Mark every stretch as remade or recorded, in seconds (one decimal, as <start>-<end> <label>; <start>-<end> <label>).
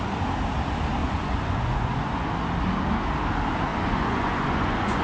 0.0-1.0 recorded; 1.0-2.3 remade; 2.3-3.7 recorded; 3.7-5.0 remade